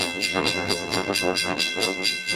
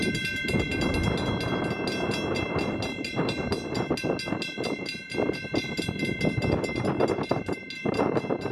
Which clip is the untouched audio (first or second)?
second